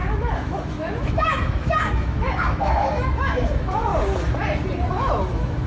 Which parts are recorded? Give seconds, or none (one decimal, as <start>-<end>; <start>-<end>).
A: 3.9-4.9